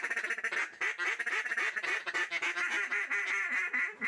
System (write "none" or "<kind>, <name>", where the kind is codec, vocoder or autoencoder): none